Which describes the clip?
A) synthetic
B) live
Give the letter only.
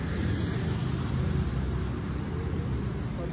B